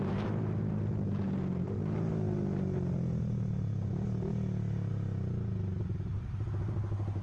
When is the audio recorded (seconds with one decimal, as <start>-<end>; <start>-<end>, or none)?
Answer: 0.0-7.2